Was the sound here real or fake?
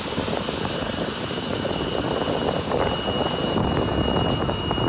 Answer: real